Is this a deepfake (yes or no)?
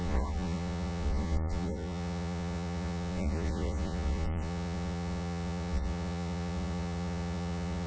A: yes